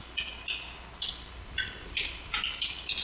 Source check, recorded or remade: recorded